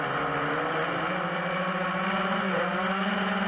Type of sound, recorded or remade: recorded